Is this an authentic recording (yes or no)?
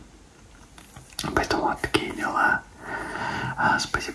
yes